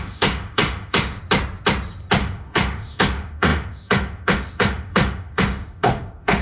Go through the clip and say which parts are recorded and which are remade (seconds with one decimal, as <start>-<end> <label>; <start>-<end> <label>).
0.0-1.2 remade; 1.2-2.2 recorded; 2.2-6.4 remade